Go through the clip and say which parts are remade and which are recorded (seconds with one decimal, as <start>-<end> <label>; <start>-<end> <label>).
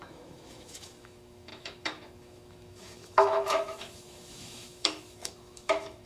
0.0-6.1 remade